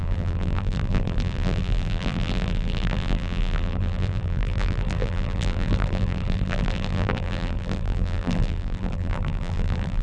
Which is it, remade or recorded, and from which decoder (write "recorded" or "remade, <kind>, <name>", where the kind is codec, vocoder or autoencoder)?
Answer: remade, vocoder, BigVGAN v2